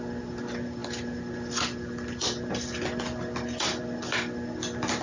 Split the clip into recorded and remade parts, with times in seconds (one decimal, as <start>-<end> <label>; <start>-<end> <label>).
0.0-5.0 recorded